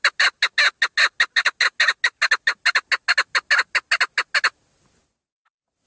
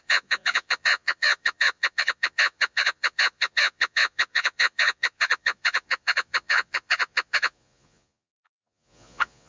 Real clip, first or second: first